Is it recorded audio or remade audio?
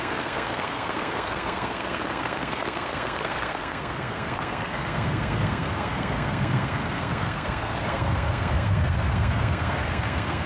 remade